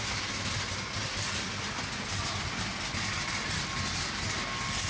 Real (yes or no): yes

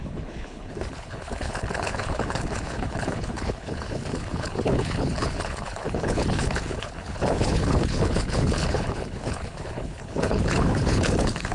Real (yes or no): no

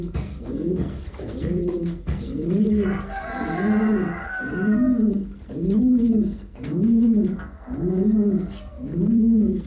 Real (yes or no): no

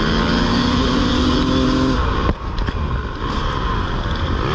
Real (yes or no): yes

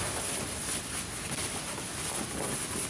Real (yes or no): yes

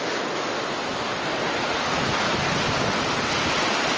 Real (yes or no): yes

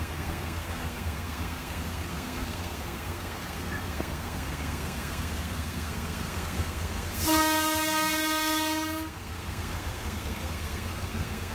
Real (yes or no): no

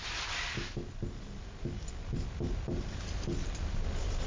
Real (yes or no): yes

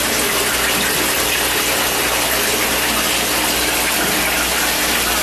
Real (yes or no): yes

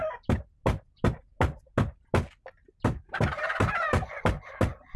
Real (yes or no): yes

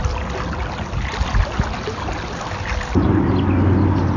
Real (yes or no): yes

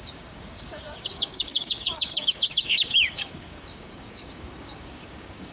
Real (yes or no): no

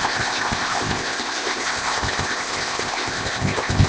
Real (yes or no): no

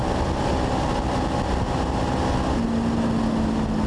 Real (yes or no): yes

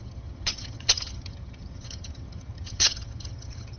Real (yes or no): no